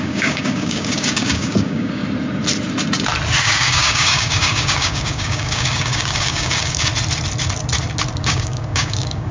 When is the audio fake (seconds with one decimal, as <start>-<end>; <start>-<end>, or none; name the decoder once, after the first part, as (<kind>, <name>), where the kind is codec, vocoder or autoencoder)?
0.0-2.0 (codec, DAC); 3.4-6.9; 8.2-9.3